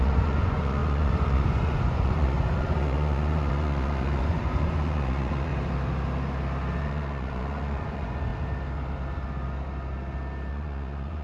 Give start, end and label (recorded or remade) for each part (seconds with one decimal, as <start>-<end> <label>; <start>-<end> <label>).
0.0-5.5 remade; 5.5-6.8 recorded; 6.8-8.3 remade; 8.3-10.5 recorded; 10.5-11.2 remade